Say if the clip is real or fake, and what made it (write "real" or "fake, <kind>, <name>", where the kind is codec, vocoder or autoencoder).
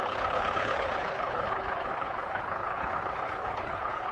fake, codec, HILCodec